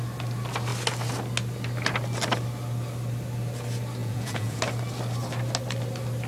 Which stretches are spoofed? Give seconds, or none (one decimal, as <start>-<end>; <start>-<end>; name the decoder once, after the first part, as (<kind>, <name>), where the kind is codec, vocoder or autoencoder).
4.0-4.6 (vocoder, Vocos)